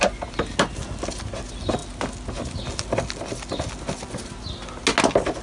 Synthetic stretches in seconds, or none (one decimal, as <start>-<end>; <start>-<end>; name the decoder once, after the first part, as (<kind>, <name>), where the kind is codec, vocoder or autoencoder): none